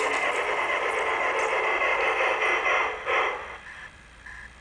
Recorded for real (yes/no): yes